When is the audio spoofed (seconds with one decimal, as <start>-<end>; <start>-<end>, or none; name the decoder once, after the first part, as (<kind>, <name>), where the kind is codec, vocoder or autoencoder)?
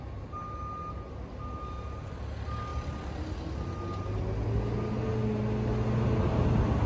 none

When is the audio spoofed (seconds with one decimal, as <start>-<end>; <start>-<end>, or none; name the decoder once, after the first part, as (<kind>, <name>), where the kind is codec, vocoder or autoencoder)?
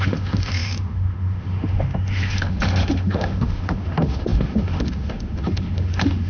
0.0-6.3 (autoencoder, DAC-VAE)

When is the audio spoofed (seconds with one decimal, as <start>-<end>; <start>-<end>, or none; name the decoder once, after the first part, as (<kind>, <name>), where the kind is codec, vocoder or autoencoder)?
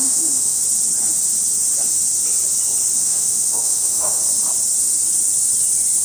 0.0-0.6 (autoencoder, DAC-VAE); 3.0-4.2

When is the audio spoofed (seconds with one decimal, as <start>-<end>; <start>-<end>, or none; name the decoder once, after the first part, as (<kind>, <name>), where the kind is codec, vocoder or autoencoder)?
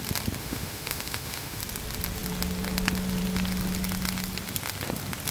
0.4-1.6 (autoencoder, DAC-VAE)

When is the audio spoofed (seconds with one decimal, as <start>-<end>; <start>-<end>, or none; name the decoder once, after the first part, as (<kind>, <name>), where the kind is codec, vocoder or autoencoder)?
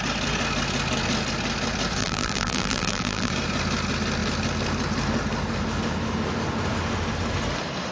2.0-3.3 (vocoder, BigVGAN v2)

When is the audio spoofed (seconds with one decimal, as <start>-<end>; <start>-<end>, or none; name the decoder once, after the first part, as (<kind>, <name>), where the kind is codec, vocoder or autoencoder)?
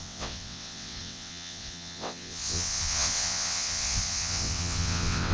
0.0-5.3 (vocoder, WaveNeXt)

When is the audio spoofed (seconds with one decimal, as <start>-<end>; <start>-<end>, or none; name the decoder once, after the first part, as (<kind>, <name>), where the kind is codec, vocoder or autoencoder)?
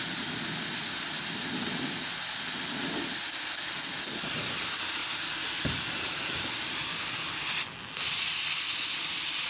none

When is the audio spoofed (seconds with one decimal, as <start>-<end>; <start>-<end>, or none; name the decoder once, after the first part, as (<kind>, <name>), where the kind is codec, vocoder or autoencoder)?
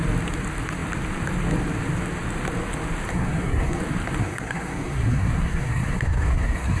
3.1-3.8 (codec, SNAC); 4.2-6.8